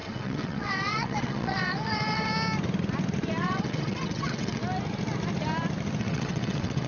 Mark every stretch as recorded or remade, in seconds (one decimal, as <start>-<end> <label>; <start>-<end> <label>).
0.0-2.3 remade; 2.3-3.4 recorded; 3.4-4.6 remade; 4.6-6.0 recorded; 6.0-6.9 remade